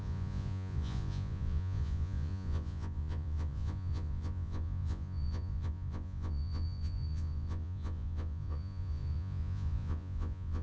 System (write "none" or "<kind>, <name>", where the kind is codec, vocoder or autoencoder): vocoder, Vocos